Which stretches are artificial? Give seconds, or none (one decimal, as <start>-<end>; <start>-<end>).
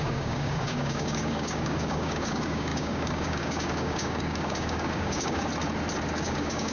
0.0-5.5; 6.2-6.7